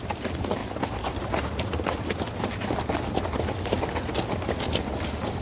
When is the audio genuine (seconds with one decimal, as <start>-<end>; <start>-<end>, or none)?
0.0-5.4